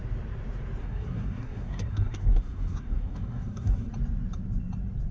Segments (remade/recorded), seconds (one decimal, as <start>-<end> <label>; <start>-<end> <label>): 0.0-0.8 recorded; 0.8-3.9 remade; 3.9-5.1 recorded